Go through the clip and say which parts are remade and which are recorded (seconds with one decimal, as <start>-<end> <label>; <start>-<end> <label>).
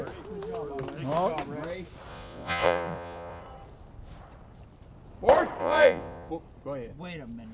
0.0-2.1 recorded; 2.1-3.4 remade; 3.4-5.6 recorded; 5.6-6.3 remade; 6.3-7.5 recorded